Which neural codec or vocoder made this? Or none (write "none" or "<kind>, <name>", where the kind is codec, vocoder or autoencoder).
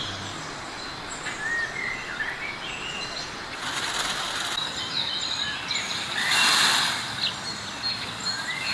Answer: none